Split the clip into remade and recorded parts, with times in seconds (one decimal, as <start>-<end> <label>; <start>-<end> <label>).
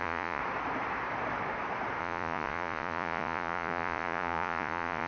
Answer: 0.0-0.4 remade; 0.4-2.0 recorded; 2.0-5.1 remade